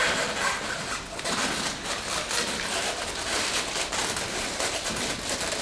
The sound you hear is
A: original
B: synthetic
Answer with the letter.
A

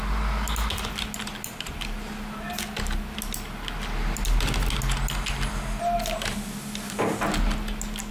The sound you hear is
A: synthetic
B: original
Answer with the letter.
B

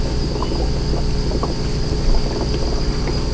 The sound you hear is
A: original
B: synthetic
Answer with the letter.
A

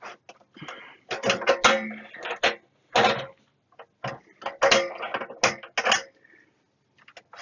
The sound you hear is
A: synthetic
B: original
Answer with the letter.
B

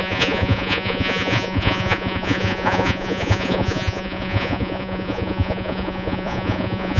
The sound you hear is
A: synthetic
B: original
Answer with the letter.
A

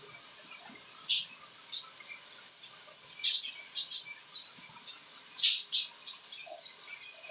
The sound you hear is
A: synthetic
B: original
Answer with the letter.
B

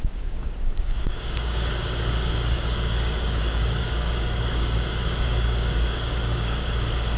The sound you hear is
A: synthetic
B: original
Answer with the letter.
A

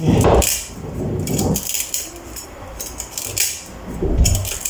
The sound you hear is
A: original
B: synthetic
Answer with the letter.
B